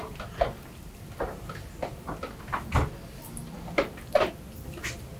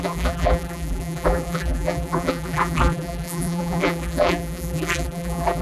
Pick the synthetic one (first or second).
second